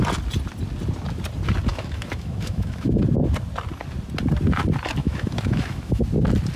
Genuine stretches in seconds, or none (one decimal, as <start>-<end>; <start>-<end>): 0.0-1.7; 3.0-5.0; 6.0-6.6